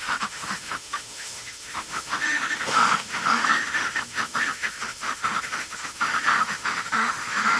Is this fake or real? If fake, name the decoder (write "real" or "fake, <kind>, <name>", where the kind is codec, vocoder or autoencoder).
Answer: fake, autoencoder, DAC-VAE